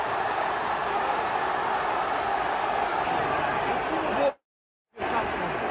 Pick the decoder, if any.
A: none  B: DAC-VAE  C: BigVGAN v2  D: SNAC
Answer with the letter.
A